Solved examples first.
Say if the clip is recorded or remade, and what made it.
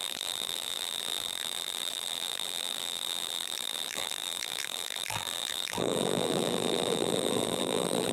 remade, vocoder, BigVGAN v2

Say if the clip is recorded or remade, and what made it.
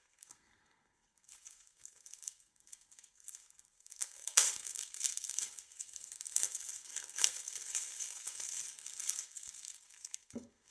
remade, codec, SNAC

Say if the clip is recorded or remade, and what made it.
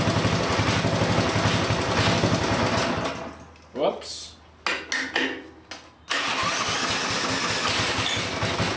recorded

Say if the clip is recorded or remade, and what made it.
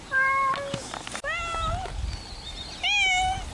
recorded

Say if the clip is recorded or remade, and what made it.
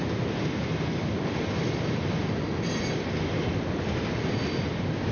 recorded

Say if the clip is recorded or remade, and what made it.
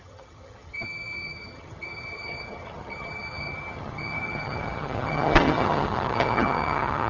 remade, vocoder, HiFi-GAN